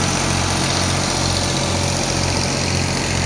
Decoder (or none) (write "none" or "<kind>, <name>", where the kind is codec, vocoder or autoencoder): none